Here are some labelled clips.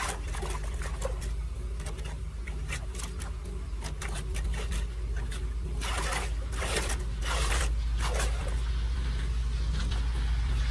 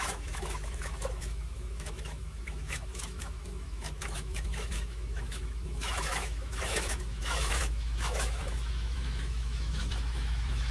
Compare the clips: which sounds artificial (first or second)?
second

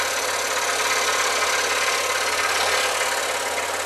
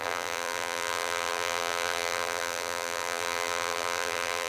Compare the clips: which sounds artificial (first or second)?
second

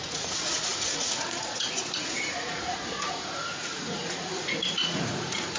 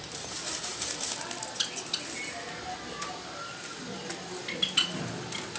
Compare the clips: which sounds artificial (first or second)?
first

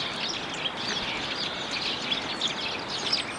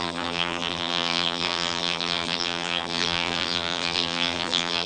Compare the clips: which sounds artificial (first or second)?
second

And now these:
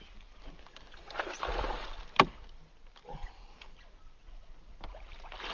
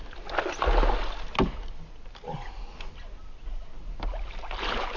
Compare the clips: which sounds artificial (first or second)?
first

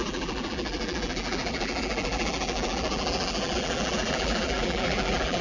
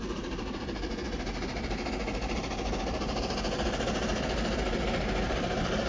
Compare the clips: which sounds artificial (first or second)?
first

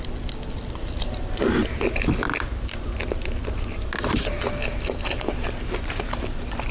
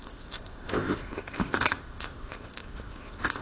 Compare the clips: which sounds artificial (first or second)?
second